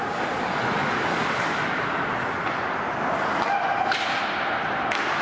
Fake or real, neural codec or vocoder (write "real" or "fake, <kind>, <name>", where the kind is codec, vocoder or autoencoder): real